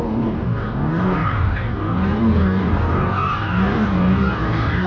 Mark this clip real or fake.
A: fake